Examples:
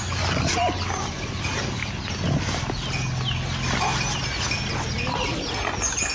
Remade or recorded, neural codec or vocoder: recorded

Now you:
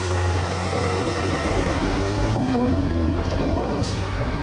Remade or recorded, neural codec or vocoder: remade, codec, SNAC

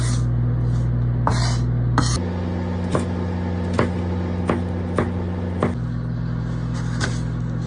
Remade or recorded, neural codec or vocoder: recorded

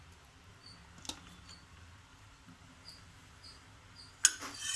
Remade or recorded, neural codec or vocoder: recorded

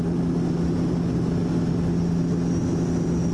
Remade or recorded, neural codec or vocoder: recorded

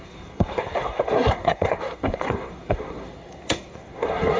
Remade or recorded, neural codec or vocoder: remade, codec, SNAC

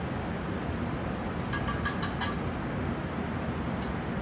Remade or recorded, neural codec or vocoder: recorded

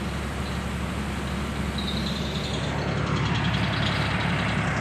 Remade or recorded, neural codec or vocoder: recorded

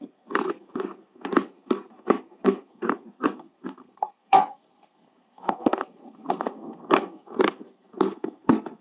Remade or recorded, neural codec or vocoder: remade, codec, SNAC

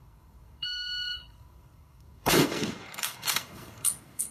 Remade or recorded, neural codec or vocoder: remade, codec, SNAC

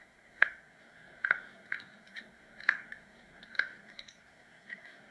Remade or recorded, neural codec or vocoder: remade, codec, SNAC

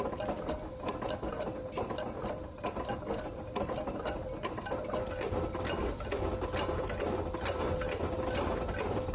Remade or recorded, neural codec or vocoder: recorded